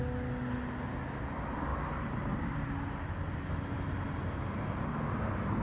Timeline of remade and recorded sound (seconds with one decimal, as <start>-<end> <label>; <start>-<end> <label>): 0.0-1.7 recorded; 1.7-2.7 remade; 2.7-5.6 recorded